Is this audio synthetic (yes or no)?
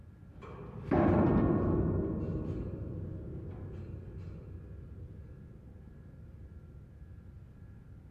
no